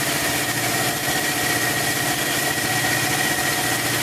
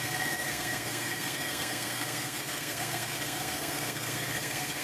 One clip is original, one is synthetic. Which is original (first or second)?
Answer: first